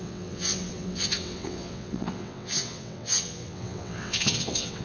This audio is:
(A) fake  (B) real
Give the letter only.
A